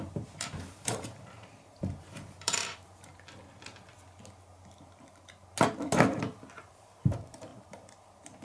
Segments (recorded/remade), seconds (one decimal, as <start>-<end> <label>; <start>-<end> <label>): 0.0-3.1 remade; 3.1-6.7 recorded; 6.7-8.4 remade